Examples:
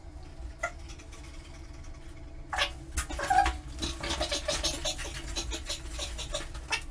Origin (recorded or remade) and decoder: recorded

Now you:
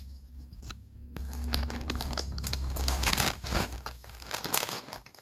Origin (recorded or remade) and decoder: remade, codec, DAC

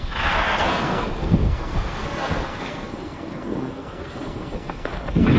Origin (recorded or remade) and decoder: remade, codec, SNAC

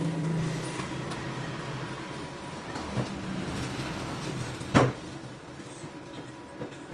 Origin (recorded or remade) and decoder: recorded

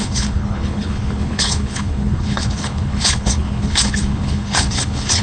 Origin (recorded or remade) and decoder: remade, codec, HILCodec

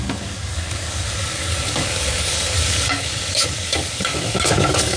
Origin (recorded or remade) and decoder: remade, codec, DAC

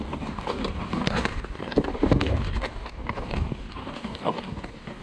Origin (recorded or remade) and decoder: remade, codec, DAC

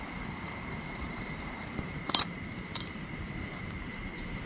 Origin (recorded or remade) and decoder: remade, vocoder, BigVGAN v2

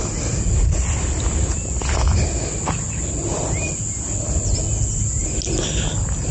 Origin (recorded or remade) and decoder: recorded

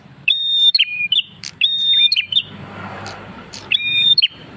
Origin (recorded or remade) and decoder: remade, vocoder, BigVGAN v2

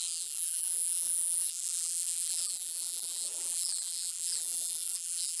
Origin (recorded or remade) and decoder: remade, vocoder, BigVGAN v2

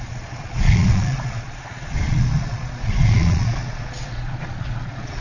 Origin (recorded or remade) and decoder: remade, vocoder, Vocos